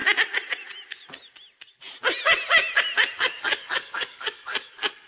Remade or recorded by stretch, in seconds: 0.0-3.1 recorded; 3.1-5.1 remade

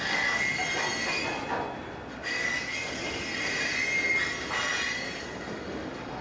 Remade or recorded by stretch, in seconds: 0.0-0.6 remade; 0.6-2.1 recorded; 2.1-3.3 remade; 3.3-5.2 recorded; 5.2-6.2 remade

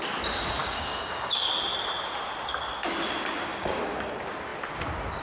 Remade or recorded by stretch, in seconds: 0.0-0.6 recorded; 0.6-1.5 remade; 1.5-3.5 recorded; 3.5-4.1 remade; 4.1-5.2 recorded

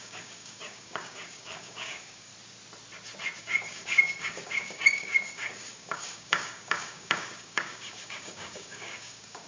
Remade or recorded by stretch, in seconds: 0.0-2.3 remade; 2.3-3.4 recorded; 3.4-9.5 remade

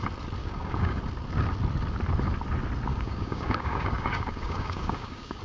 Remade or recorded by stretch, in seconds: 0.0-0.4 recorded; 0.4-1.0 remade; 1.0-2.9 recorded; 2.9-5.4 remade

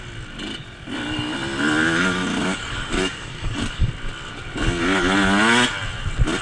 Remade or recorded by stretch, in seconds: 0.0-2.4 recorded; 2.4-3.9 remade; 3.9-6.4 recorded